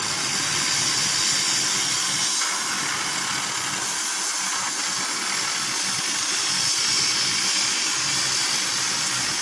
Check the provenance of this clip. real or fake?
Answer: real